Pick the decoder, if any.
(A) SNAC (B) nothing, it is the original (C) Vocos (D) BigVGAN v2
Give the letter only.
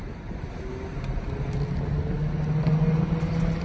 B